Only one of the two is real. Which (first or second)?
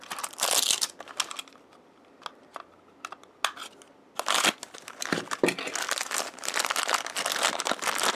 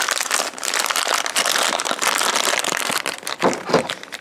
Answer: first